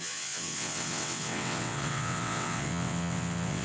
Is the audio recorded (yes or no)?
no